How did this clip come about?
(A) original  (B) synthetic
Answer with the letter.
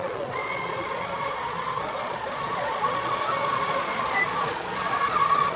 B